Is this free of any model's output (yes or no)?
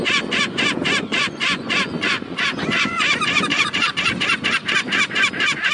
no